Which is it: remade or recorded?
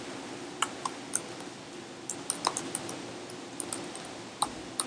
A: recorded